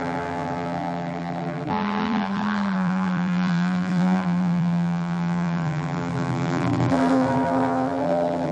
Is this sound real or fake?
fake